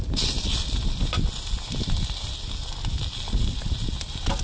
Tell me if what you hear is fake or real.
real